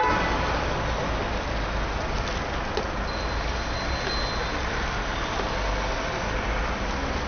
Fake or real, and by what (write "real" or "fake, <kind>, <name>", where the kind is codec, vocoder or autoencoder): real